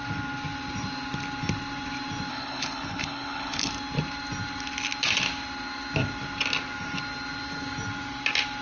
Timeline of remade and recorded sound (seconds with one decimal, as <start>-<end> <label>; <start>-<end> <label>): 0.0-2.3 recorded; 2.3-3.7 remade; 3.7-8.6 recorded